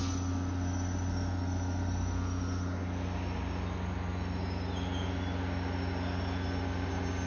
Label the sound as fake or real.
real